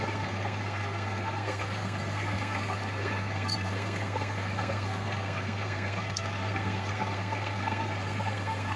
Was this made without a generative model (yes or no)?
no